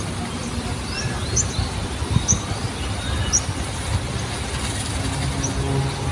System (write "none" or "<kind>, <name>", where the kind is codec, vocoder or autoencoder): none